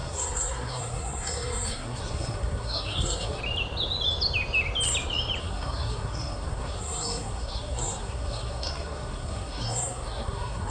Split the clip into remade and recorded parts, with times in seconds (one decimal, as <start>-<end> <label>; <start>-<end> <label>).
0.0-3.4 remade; 3.4-5.4 recorded; 5.4-10.7 remade